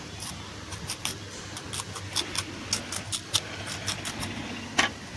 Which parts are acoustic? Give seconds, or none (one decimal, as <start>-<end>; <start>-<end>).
0.0-5.2